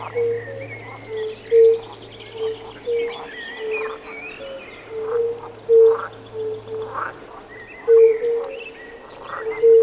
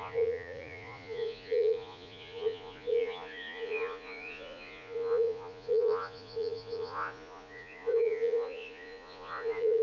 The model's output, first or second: second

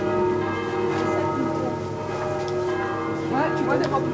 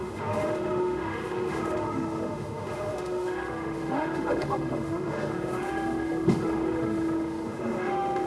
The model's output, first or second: second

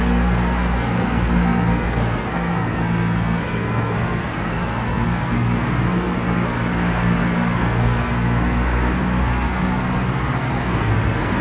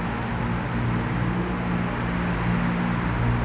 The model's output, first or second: first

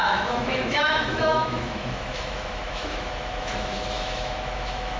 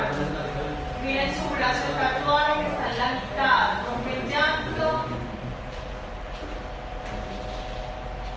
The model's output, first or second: first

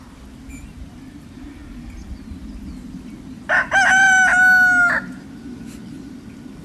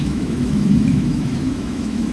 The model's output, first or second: second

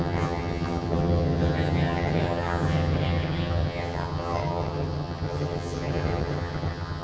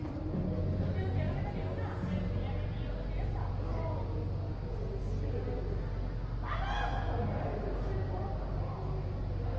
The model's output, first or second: first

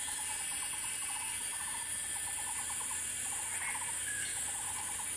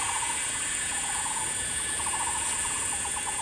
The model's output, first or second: second